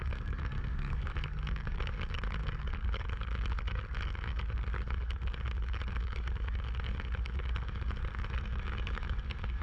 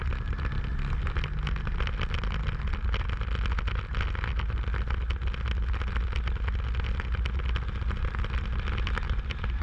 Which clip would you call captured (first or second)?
second